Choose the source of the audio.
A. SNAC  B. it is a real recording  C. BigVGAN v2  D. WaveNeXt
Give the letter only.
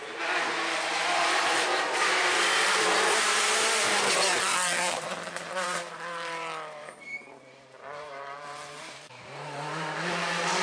C